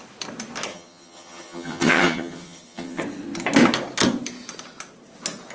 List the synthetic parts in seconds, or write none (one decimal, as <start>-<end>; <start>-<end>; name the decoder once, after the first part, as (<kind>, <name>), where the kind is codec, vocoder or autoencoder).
0.7-3.0 (vocoder, HiFi-GAN)